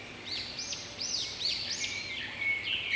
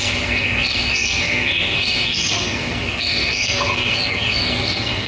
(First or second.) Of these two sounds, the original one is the first